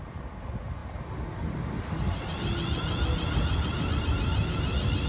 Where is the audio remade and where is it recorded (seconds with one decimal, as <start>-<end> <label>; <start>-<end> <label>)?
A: 0.0-5.1 recorded